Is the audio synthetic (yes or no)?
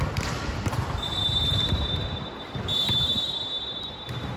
yes